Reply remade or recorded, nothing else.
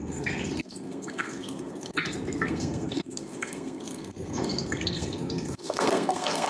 remade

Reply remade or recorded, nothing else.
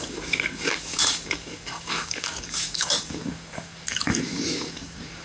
remade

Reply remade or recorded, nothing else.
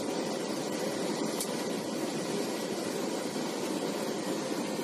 recorded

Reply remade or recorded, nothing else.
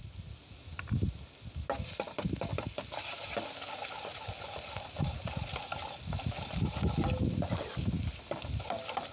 recorded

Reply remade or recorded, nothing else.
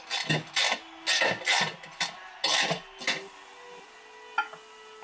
recorded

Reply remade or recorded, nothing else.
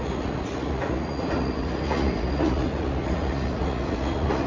remade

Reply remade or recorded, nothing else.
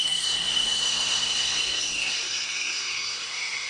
remade